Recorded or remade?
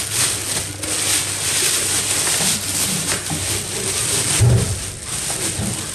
recorded